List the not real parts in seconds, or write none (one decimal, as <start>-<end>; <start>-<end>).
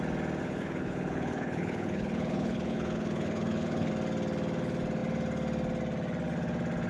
0.4-3.9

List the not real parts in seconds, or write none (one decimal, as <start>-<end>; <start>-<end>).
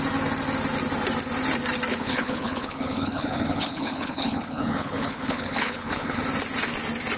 1.9-6.2